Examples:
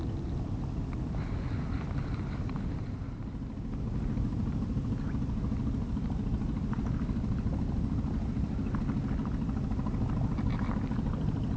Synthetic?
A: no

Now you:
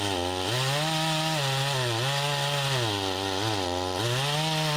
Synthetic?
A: no